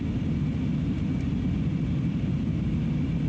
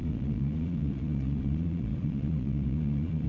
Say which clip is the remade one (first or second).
second